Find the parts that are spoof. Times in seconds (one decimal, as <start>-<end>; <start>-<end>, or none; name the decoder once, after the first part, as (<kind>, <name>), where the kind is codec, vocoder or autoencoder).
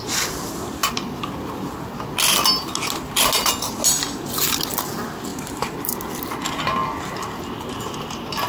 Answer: 5.3-6.0 (vocoder, BigVGAN v2)